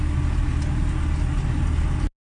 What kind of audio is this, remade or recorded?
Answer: recorded